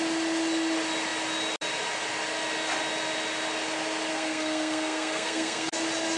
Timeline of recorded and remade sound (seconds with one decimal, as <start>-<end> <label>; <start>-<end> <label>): 0.0-4.1 recorded; 4.1-5.7 remade; 5.7-6.2 recorded